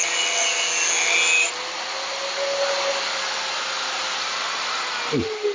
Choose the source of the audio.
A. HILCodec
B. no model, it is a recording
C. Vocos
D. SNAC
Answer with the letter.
B